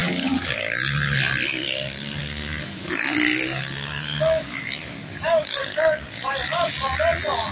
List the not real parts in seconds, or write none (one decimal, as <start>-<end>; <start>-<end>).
0.0-0.6; 2.2-6.7